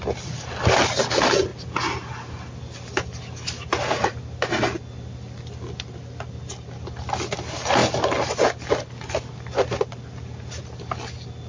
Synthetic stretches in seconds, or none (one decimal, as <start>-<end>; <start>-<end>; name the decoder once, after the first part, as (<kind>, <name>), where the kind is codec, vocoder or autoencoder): 1.5-4.1 (vocoder, BigVGAN v2)